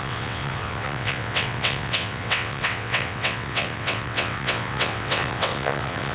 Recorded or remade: remade